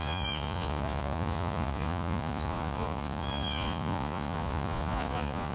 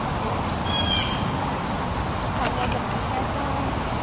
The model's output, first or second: first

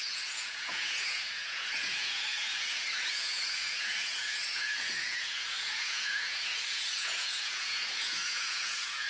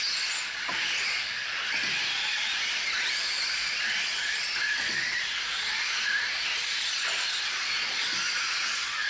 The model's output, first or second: first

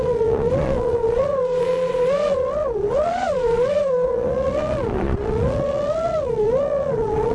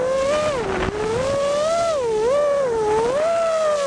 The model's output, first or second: first